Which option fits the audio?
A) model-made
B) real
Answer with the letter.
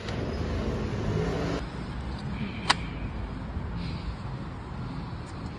B